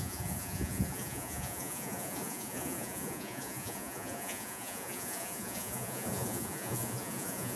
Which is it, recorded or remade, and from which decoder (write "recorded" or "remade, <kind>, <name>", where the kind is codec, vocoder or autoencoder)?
remade, vocoder, Vocos